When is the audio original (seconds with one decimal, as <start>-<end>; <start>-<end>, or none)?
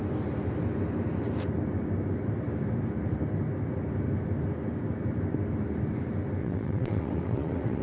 0.0-6.4